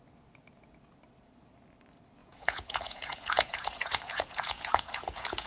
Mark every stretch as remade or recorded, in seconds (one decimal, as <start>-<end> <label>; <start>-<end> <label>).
0.0-2.2 recorded; 2.2-5.5 remade